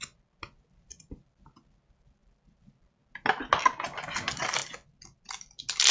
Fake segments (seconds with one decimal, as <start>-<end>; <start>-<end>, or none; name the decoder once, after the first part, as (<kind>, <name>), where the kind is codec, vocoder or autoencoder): none